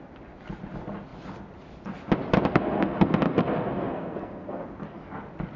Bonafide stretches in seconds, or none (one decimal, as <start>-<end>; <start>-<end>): 0.0-2.5; 4.6-5.6